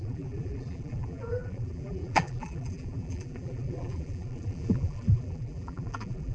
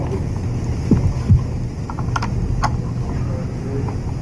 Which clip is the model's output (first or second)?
first